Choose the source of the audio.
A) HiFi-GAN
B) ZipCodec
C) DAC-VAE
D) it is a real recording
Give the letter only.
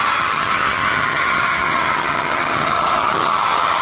A